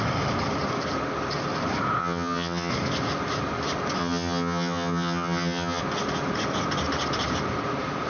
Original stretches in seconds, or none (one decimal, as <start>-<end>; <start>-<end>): 0.0-2.0; 2.7-4.0; 5.8-8.1

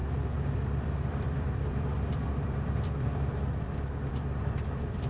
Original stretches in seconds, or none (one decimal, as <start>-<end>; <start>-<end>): none

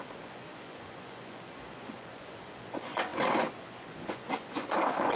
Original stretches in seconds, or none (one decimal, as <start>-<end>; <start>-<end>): none

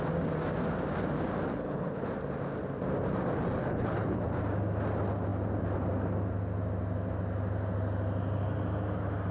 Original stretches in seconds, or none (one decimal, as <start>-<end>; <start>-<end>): 0.0-1.5; 2.1-3.6; 4.3-9.3

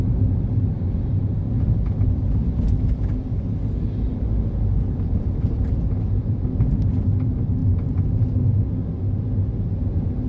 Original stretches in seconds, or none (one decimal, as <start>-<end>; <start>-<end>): 0.0-10.3

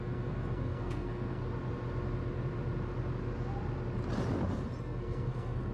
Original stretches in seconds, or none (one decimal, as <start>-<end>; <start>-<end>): 1.4-4.8